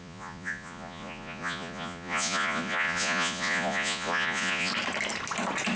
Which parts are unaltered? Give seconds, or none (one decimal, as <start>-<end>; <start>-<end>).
4.7-5.8